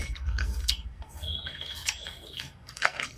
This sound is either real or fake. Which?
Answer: fake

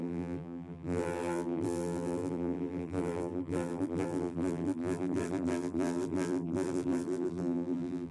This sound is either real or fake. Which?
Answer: fake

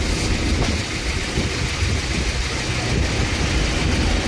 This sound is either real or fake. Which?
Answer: real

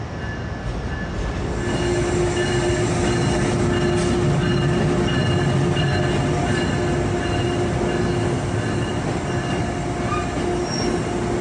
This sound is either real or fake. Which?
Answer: real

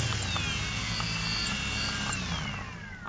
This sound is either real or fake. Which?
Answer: real